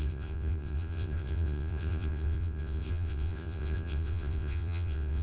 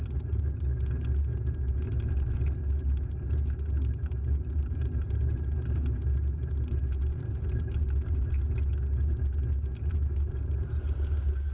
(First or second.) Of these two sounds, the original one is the second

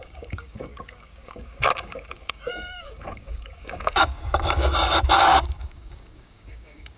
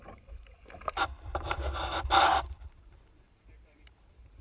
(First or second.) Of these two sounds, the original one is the second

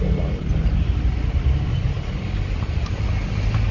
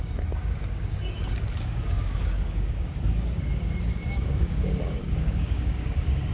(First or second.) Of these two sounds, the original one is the first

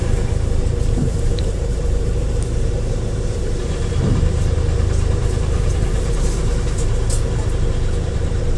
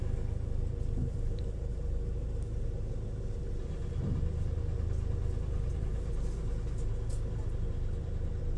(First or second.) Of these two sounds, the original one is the second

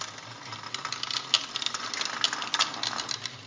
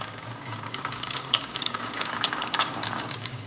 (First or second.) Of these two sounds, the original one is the first